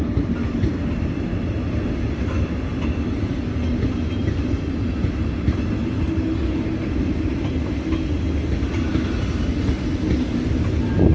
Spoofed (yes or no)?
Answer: no